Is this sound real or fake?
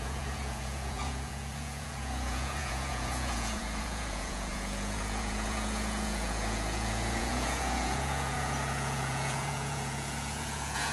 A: fake